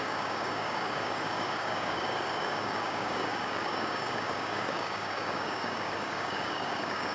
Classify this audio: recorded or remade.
remade